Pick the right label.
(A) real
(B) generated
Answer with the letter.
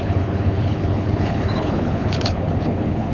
B